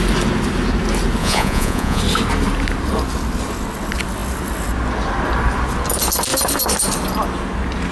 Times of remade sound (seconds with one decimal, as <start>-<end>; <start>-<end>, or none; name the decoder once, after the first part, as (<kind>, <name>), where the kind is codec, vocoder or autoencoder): 1.2-2.0 (vocoder, Vocos)